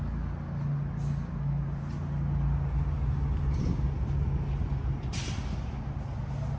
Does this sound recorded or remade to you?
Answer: recorded